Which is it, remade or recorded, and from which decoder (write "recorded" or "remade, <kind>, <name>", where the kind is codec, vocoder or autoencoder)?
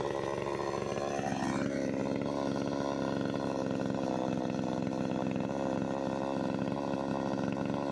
recorded